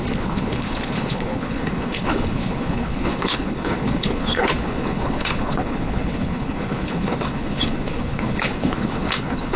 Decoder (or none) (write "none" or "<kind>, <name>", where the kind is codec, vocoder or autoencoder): codec, HILCodec